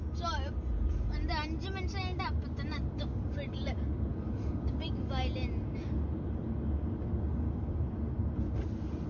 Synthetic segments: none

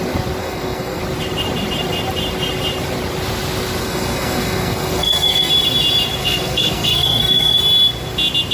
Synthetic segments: 0.4-1.0 (codec, SNAC); 3.8-5.5; 6.2-7.6

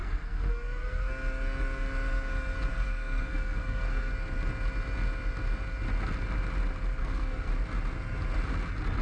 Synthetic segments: 0.0-1.1 (codec, SNAC); 2.7-4.1; 7.0-7.5

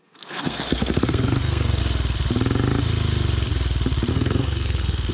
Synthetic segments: 0.0-1.8 (codec, SNAC); 4.1-5.1

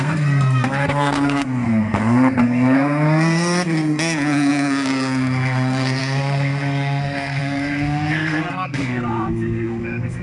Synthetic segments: 0.0-10.2 (codec, SNAC)

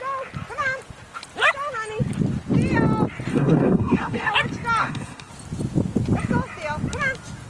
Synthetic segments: 3.3-4.3 (codec, SNAC); 4.8-5.3

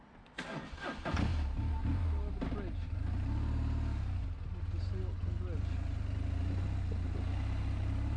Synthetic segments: none

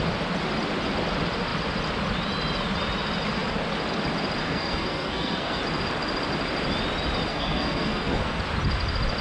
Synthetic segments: 4.4-5.6 (codec, SNAC); 7.3-8.4